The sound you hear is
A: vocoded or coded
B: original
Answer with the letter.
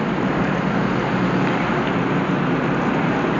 B